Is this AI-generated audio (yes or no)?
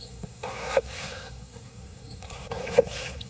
yes